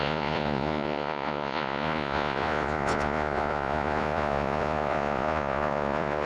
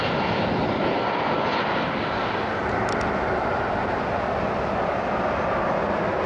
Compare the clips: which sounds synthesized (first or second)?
first